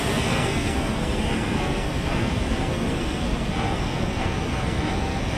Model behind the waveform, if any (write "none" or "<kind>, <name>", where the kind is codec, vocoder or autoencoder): codec, SNAC